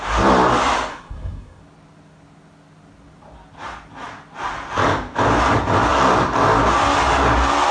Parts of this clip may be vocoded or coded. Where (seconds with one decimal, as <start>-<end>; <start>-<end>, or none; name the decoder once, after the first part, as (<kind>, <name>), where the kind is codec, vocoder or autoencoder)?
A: 0.9-1.6 (codec, SNAC)